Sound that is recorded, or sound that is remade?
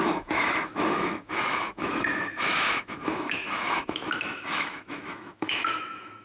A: remade